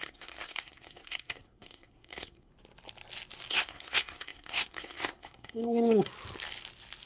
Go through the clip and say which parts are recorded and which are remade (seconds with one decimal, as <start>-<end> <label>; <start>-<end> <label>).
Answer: 0.0-2.5 remade; 2.5-3.5 recorded; 3.5-6.1 remade; 6.1-7.1 recorded